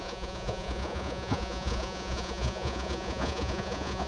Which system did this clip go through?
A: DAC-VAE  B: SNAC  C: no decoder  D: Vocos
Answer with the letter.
D